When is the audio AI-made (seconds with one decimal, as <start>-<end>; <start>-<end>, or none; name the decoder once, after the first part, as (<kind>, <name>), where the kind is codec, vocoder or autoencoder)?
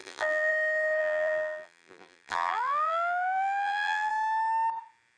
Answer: 0.0-0.5 (vocoder, BigVGAN v2); 1.0-4.1